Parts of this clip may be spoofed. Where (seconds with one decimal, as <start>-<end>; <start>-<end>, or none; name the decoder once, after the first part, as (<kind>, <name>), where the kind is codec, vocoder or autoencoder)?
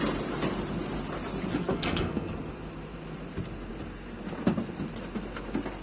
1.6-2.3 (codec, SNAC)